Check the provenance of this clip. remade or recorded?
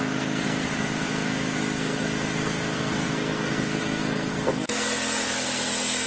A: remade